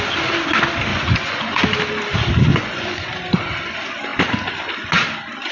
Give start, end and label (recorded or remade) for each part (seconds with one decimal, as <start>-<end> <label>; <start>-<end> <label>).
0.0-0.9 recorded; 0.9-1.6 remade; 1.6-2.5 recorded; 2.5-3.1 remade; 3.1-5.5 recorded